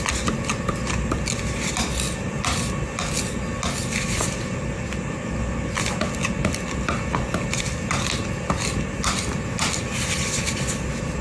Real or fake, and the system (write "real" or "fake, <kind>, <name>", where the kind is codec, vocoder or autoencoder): real